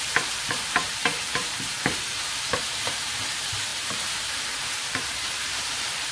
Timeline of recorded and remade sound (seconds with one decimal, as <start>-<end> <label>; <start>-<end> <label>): 0.0-6.1 remade